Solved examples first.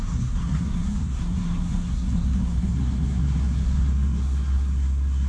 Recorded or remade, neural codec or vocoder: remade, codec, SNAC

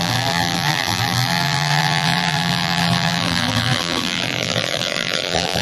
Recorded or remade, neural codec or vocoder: remade, vocoder, BigVGAN v2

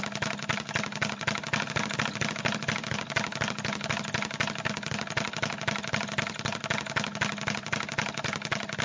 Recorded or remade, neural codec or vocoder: recorded